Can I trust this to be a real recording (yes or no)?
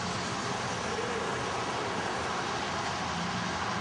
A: yes